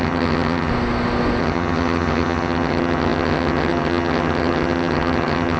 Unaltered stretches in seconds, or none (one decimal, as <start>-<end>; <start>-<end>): 0.7-1.4

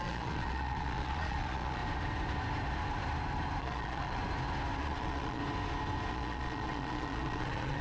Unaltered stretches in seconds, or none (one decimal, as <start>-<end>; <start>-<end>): 1.8-3.6; 4.2-4.8; 5.4-6.1